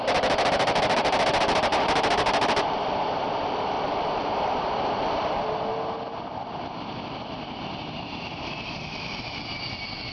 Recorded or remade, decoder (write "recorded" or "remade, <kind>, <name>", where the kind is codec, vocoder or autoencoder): recorded